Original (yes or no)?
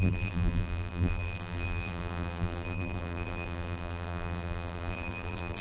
no